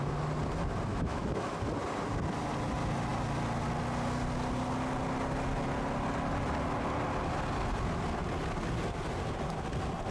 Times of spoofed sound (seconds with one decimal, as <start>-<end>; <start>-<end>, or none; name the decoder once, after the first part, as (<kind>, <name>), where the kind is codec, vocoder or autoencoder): 0.9-1.6 (autoencoder, DAC-VAE)